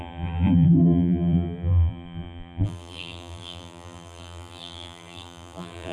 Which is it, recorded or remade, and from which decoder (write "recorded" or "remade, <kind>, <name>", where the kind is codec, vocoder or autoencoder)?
remade, vocoder, BigVGAN v2